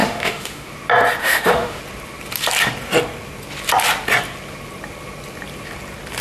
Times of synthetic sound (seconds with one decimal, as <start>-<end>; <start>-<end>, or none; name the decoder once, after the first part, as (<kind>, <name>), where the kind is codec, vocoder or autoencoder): 0.0-0.7 (autoencoder, DAC-VAE); 1.2-1.8